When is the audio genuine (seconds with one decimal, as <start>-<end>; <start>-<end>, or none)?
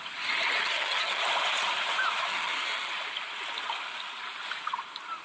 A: 0.0-0.6; 1.2-2.3; 2.9-5.2